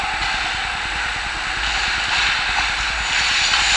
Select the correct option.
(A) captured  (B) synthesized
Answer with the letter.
A